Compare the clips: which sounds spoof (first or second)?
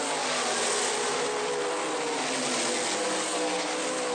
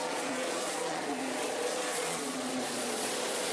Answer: second